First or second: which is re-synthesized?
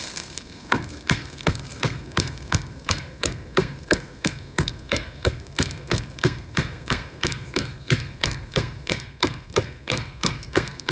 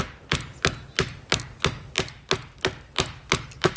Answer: first